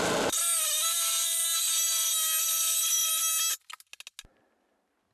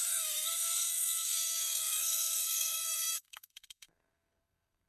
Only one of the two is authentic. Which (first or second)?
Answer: first